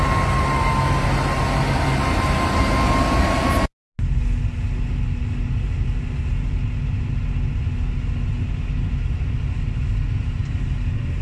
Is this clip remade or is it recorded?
recorded